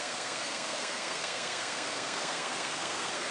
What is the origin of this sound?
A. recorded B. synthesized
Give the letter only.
B